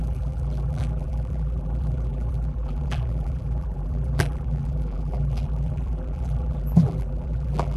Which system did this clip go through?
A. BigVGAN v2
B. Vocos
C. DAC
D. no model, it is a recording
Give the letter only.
A